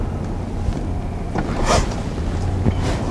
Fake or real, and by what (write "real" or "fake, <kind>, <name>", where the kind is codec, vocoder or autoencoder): real